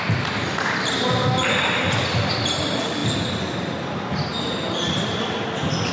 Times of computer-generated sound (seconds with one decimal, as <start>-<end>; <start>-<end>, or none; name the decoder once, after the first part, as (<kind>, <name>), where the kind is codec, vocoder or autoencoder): none